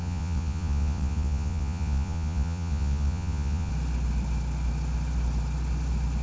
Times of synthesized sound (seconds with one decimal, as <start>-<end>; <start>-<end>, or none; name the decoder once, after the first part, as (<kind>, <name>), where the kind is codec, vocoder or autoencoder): 0.0-3.7 (vocoder, Vocos)